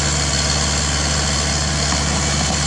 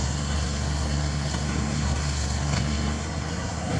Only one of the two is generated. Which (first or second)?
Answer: second